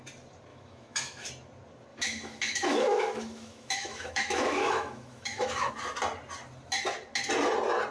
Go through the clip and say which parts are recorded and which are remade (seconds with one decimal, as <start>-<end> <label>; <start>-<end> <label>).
0.0-0.5 recorded; 0.5-1.3 remade; 1.3-1.9 recorded; 1.9-5.7 remade; 5.7-7.9 recorded